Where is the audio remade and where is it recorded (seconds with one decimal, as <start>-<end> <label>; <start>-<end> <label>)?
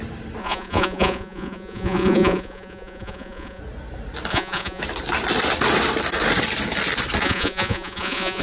0.0-0.4 recorded; 0.4-3.6 remade; 3.6-4.3 recorded; 4.3-4.8 remade; 4.8-7.2 recorded; 7.2-8.4 remade